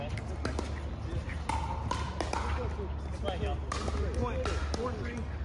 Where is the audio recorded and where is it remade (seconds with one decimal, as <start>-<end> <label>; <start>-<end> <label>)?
0.0-5.4 recorded